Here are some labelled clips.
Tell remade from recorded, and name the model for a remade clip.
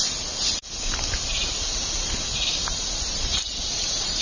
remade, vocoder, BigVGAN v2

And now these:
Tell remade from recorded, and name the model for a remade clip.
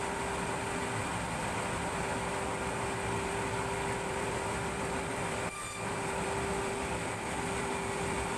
recorded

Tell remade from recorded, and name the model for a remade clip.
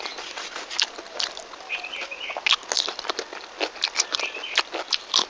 recorded